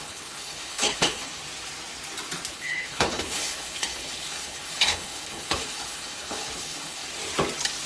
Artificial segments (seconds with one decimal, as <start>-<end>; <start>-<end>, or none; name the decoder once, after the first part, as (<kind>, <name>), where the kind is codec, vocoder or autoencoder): 0.0-1.4 (codec, HILCodec); 2.5-7.0